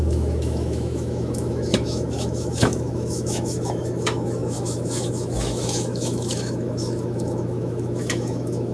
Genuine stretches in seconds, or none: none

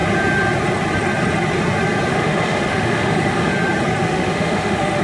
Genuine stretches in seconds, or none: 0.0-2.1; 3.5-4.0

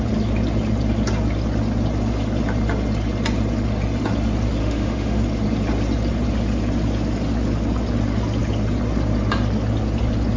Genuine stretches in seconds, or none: 0.0-4.6; 5.2-10.4

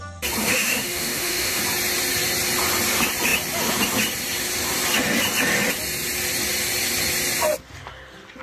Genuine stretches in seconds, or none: 0.0-0.4; 1.6-8.4

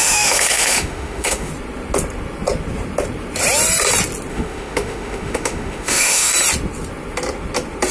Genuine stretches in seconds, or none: 1.5-4.3; 6.3-7.9